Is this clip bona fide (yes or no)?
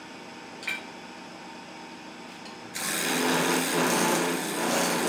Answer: yes